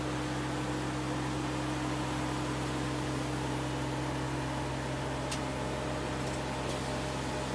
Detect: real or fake real